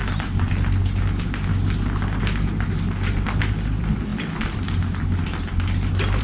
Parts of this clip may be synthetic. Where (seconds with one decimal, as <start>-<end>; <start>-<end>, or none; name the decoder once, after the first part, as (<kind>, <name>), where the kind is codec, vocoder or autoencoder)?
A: none